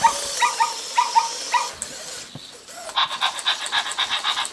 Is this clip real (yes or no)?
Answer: yes